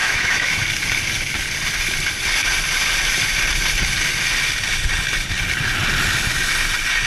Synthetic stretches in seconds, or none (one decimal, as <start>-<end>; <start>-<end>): 0.0-0.6